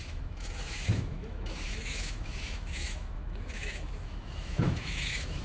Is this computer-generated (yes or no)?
yes